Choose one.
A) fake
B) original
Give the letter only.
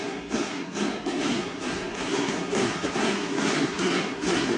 A